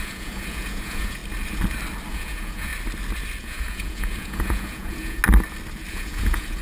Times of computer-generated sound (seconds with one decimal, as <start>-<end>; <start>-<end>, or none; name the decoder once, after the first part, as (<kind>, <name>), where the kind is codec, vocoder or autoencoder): 0.0-1.2 (vocoder, Vocos); 2.1-2.7; 3.4-5.2; 5.9-6.6